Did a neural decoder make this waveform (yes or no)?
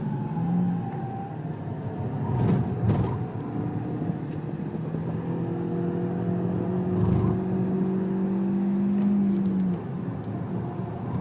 no